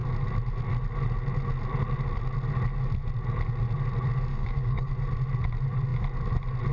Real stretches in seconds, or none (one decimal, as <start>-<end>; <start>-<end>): 0.0-4.3; 4.9-6.7